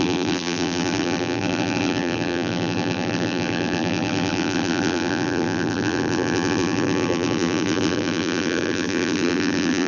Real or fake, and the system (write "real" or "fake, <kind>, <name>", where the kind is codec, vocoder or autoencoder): fake, vocoder, BigVGAN v2